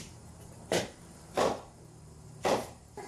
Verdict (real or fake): fake